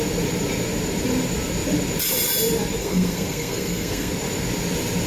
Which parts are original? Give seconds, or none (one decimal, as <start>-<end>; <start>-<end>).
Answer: 0.0-2.8; 4.1-5.1